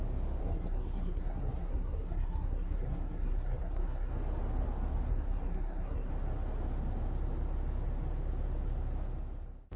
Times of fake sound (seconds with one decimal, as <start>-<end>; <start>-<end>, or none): 0.4-4.1; 5.1-6.1